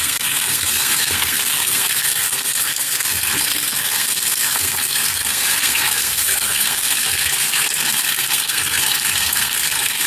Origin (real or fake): fake